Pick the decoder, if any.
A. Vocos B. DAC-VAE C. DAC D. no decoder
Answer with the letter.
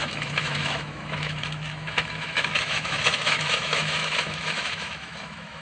B